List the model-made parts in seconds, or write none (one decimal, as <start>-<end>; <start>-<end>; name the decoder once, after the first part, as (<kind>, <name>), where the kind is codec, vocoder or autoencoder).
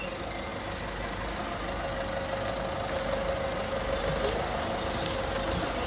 none